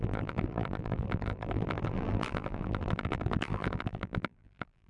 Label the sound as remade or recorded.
remade